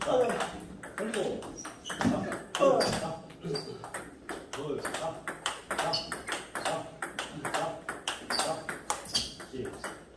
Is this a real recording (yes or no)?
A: yes